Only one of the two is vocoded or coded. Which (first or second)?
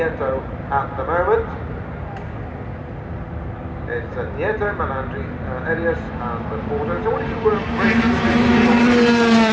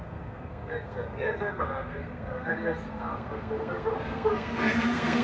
second